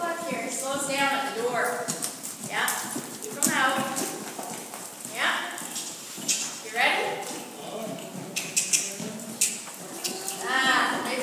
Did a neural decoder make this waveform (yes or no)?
no